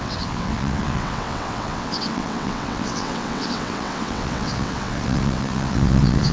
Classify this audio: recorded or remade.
remade